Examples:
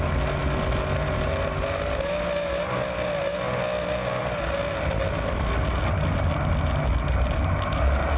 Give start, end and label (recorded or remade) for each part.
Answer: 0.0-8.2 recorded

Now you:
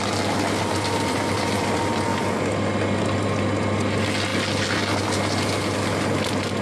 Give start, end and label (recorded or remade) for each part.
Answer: 0.0-6.6 recorded

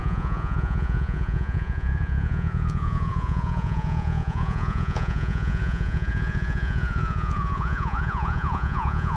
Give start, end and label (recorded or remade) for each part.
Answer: 0.0-9.2 remade

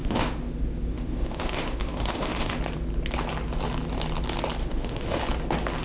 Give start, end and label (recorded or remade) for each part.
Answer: 0.0-0.5 remade; 0.5-0.9 recorded; 0.9-2.6 remade; 2.6-4.6 recorded; 4.6-5.2 remade; 5.2-5.8 recorded

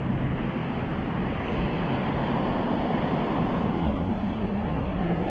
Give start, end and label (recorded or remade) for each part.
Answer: 0.0-3.7 recorded; 3.7-5.3 remade

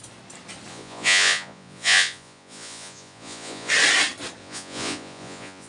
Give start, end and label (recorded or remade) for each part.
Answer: 0.0-0.7 recorded; 0.7-3.7 remade; 3.7-4.4 recorded; 4.4-5.7 remade